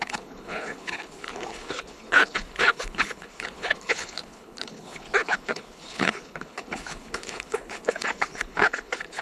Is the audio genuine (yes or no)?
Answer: no